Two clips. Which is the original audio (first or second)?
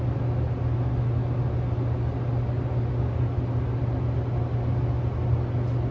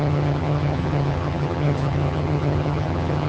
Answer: first